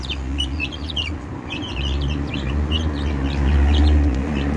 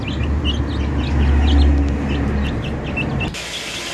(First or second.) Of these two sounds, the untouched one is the second